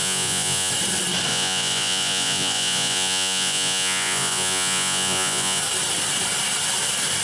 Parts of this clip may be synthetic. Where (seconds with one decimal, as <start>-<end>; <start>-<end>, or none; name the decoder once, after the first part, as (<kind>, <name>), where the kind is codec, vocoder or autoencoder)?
0.0-0.7 (vocoder, Vocos); 1.3-5.6